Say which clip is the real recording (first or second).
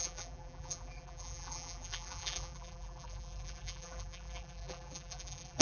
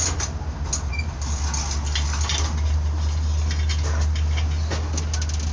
second